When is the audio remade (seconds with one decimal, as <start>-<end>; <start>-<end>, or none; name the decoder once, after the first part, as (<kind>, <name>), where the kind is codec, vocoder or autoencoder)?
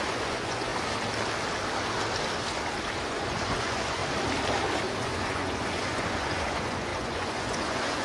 0.0-0.7 (vocoder, Vocos); 3.1-4.0; 5.0-8.0